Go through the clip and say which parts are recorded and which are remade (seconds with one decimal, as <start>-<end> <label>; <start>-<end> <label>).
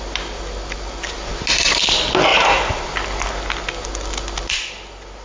0.0-5.2 recorded